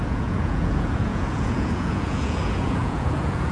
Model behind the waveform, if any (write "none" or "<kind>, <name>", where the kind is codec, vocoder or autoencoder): vocoder, Vocos